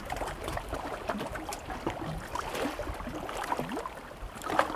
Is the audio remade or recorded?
recorded